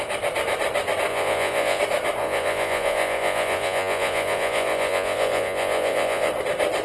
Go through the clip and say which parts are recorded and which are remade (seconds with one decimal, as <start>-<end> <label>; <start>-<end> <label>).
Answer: 0.0-1.1 recorded; 1.1-1.8 remade; 1.8-2.2 recorded; 2.2-6.3 remade; 6.3-6.8 recorded